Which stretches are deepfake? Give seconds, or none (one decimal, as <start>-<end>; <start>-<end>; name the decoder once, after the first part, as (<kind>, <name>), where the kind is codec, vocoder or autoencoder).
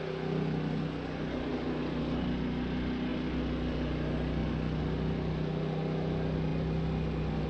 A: none